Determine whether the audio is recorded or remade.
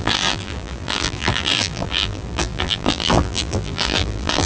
remade